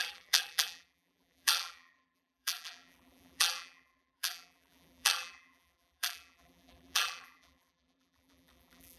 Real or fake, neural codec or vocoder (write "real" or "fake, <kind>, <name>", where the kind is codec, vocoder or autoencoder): fake, vocoder, BigVGAN v2